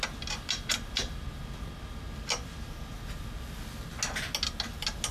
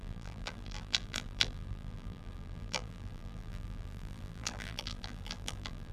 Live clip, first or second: first